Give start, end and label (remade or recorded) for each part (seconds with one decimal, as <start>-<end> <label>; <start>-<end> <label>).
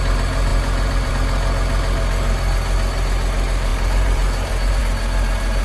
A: 0.0-0.5 recorded; 0.5-1.1 remade; 1.1-3.7 recorded; 3.7-4.8 remade; 4.8-5.6 recorded